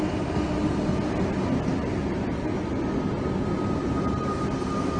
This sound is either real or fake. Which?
real